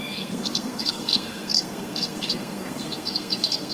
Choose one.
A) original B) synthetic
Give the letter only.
B